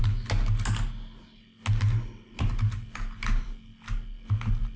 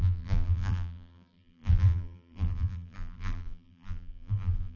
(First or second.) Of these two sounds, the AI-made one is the second